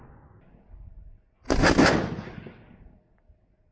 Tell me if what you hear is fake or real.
real